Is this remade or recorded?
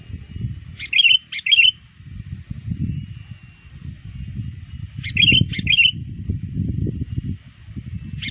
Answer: recorded